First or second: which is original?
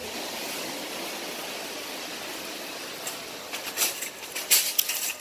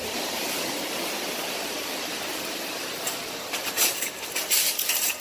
first